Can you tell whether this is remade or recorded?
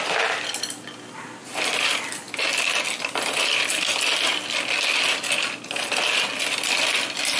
recorded